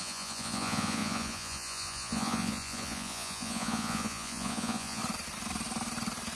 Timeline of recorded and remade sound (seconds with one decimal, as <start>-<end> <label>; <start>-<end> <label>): 0.0-5.0 remade; 5.0-6.4 recorded